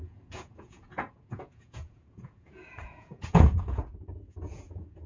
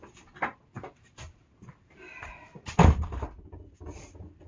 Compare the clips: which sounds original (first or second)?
second